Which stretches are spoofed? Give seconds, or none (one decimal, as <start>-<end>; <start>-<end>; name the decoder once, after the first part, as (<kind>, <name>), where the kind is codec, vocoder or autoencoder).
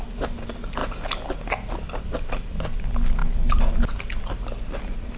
none